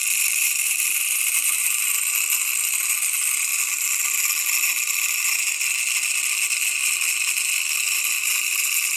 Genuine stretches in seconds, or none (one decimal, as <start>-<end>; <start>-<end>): 0.0-0.4; 1.9-9.0